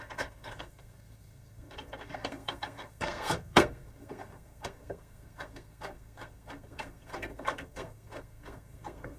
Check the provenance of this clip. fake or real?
fake